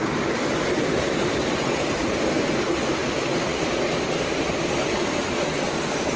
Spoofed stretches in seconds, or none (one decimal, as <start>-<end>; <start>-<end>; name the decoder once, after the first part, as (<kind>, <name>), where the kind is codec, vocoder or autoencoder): none